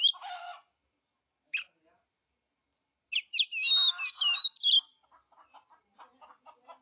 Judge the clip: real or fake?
real